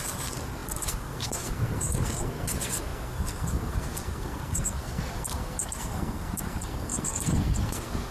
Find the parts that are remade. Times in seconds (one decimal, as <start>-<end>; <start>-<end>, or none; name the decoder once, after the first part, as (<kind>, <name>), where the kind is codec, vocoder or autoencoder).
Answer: 0.0-8.1 (codec, SNAC)